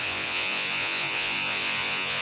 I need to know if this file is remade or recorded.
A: remade